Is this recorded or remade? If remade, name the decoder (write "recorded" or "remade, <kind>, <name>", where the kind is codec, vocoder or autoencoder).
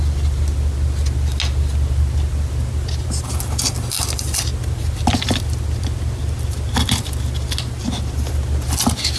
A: recorded